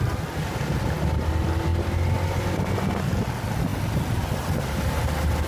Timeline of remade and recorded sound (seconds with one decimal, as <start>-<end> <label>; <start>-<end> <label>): 0.0-3.7 recorded; 3.7-5.0 remade; 5.0-5.5 recorded